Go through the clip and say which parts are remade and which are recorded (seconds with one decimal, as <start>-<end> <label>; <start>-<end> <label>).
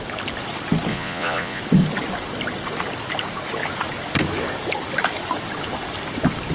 0.0-0.9 recorded; 0.9-1.6 remade; 1.6-6.5 recorded